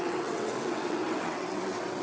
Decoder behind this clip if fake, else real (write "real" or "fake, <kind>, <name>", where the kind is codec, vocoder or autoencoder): fake, vocoder, WaveNeXt